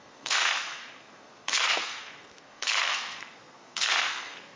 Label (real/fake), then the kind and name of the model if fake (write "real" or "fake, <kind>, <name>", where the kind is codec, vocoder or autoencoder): fake, codec, SNAC